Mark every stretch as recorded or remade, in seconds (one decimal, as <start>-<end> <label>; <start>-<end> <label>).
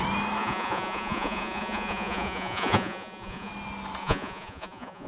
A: 0.0-0.4 recorded; 0.4-3.5 remade; 3.5-4.0 recorded; 4.0-5.1 remade